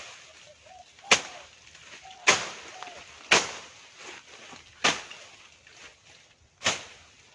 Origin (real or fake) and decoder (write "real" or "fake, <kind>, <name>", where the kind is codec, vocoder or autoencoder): real